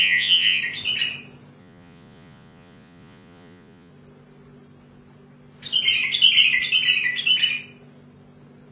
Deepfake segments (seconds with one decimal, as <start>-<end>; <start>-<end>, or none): 0.0-0.6; 1.6-3.9